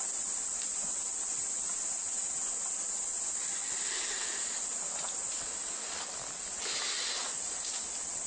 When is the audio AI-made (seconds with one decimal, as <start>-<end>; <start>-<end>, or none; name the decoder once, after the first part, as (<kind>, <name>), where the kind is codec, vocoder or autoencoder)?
none